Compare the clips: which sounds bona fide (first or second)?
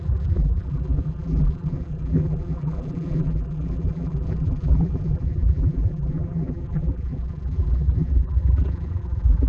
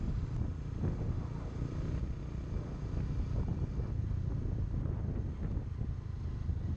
second